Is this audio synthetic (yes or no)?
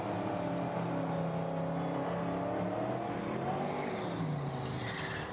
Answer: no